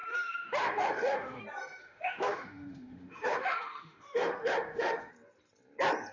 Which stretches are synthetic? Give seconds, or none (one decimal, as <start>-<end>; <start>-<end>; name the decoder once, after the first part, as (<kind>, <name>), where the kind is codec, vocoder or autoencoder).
0.0-1.4 (autoencoder, DAC-VAE); 1.8-5.1